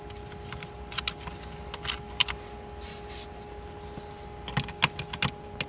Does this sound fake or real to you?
real